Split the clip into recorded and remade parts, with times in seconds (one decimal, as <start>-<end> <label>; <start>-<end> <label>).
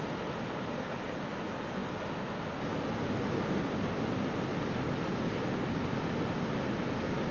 0.0-4.5 recorded; 4.5-5.0 remade; 5.0-7.3 recorded